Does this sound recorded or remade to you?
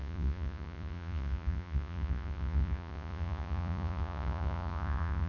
remade